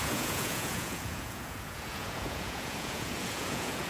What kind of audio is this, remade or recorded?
remade